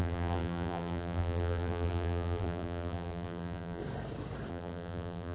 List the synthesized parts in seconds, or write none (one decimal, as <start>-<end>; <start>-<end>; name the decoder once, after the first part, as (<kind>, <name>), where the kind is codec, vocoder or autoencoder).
0.0-3.8 (vocoder, BigVGAN v2); 4.5-5.3